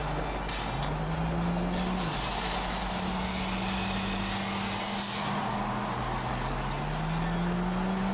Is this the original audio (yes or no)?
yes